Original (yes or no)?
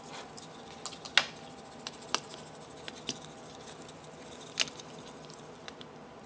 yes